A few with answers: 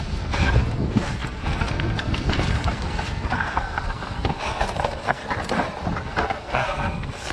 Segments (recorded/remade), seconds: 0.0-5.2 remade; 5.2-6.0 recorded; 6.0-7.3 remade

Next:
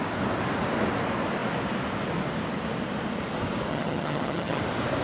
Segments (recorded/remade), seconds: 0.0-3.7 recorded; 3.7-4.6 remade; 4.6-5.0 recorded

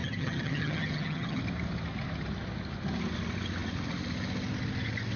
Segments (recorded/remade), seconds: 0.0-1.4 remade; 1.4-5.2 recorded

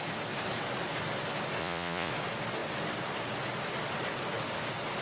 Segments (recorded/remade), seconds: 0.0-1.6 recorded; 1.6-2.1 remade; 2.1-5.0 recorded

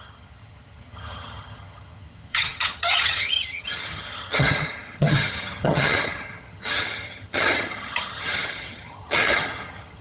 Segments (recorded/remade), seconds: 0.0-10.0 remade

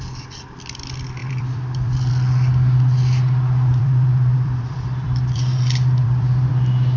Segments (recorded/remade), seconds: 0.0-1.2 recorded; 1.2-2.1 remade; 2.1-3.7 recorded; 3.7-6.5 remade; 6.5-7.0 recorded

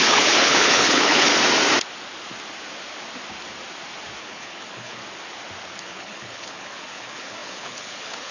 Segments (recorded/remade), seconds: 0.0-1.3 remade; 1.3-4.2 recorded; 4.2-5.0 remade; 5.0-5.8 recorded; 5.8-8.3 remade

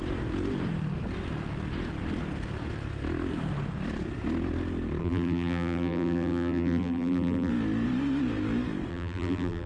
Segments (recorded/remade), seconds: 0.0-5.0 recorded; 5.0-7.5 remade; 7.5-8.9 recorded; 8.9-9.7 remade